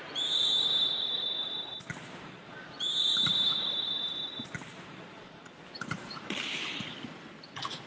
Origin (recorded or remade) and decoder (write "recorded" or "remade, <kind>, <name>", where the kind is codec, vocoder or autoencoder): recorded